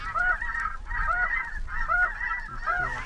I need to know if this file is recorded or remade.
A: recorded